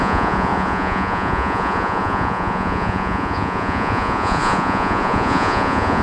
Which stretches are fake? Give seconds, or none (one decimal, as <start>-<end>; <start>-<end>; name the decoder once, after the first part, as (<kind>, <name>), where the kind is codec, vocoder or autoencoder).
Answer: 0.0-6.0 (vocoder, Vocos)